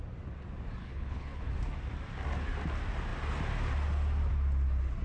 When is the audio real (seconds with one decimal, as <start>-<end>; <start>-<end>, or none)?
0.0-0.8; 1.5-5.0